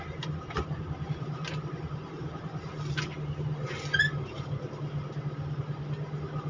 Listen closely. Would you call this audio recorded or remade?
recorded